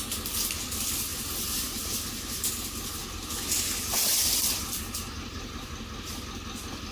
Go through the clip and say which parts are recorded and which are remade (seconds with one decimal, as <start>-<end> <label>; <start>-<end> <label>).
0.0-1.1 recorded; 1.1-2.5 remade; 2.5-3.0 recorded; 3.0-5.7 remade; 5.7-6.9 recorded